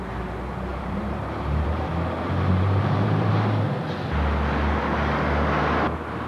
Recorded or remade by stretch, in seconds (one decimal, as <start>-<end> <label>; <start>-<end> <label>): 0.0-0.7 recorded; 0.7-3.3 remade; 3.3-6.3 recorded